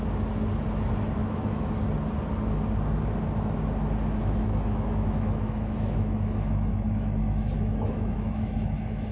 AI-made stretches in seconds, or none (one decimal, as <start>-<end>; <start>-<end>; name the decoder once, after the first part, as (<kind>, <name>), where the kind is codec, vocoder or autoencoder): 1.2-1.7 (autoencoder, DAC-VAE); 4.2-9.1